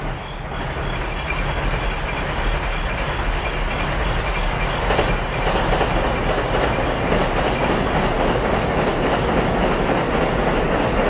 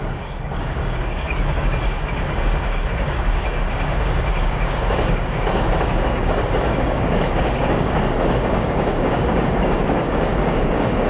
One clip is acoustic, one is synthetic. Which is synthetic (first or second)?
second